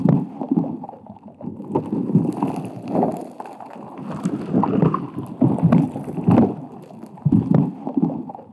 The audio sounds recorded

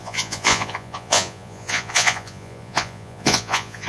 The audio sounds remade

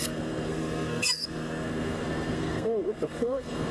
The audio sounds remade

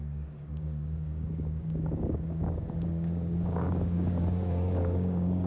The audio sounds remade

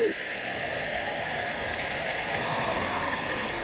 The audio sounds remade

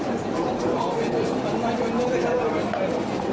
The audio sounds recorded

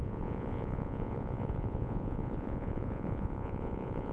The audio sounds remade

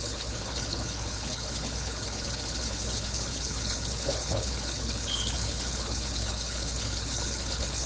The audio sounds remade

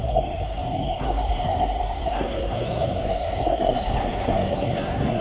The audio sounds remade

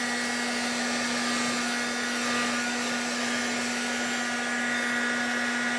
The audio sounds recorded